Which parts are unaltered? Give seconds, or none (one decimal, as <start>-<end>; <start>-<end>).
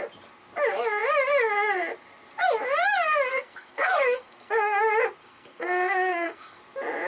0.0-3.3; 4.8-5.2; 6.6-7.1